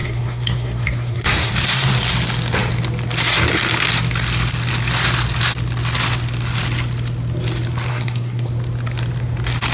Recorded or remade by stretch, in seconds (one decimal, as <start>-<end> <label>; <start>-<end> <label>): 0.0-1.5 remade; 1.5-7.9 recorded; 7.9-8.5 remade; 8.5-9.7 recorded